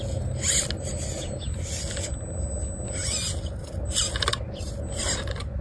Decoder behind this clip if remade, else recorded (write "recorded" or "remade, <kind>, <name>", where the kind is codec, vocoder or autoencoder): recorded